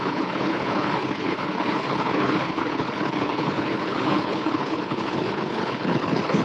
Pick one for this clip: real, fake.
fake